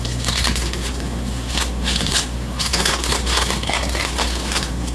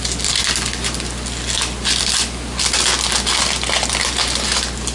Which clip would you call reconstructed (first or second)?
first